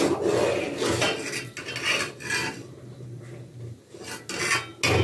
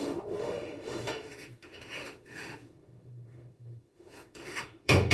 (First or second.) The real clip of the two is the first